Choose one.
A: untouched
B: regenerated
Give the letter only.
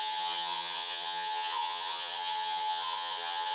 B